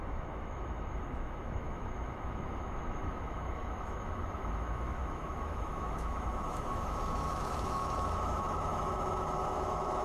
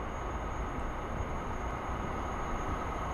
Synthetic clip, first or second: first